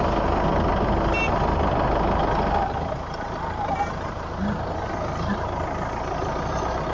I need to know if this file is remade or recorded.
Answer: recorded